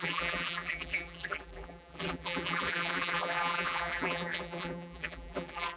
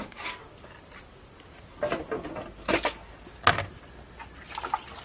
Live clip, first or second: second